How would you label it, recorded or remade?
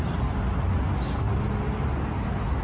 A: recorded